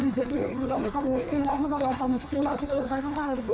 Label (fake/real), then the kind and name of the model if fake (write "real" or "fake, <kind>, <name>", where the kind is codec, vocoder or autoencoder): fake, codec, SNAC